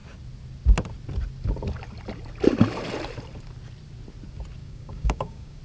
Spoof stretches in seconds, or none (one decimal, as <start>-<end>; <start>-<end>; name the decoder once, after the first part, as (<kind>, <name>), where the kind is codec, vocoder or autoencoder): 4.6-5.6 (codec, DAC)